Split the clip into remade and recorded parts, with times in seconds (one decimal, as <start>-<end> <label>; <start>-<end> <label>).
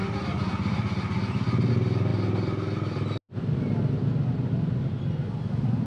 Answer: 0.0-5.9 recorded